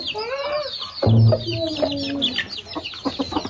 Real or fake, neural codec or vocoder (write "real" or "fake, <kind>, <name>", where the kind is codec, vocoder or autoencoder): real